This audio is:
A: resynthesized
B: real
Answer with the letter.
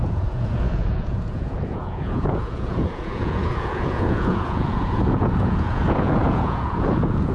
A